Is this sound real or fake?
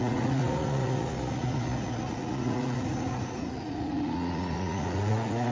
fake